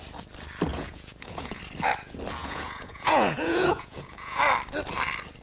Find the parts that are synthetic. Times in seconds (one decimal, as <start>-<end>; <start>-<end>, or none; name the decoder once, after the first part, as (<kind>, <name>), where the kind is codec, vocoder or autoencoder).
0.7-1.6 (vocoder, Vocos); 2.4-4.4